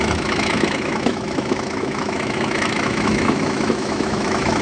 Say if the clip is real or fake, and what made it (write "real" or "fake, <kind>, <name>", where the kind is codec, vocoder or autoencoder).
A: fake, autoencoder, DAC-VAE